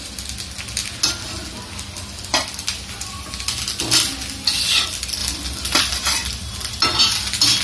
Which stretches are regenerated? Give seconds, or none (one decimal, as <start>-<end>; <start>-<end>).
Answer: none